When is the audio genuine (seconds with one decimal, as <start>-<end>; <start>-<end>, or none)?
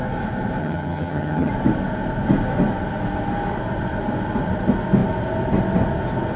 0.0-0.6; 1.5-6.4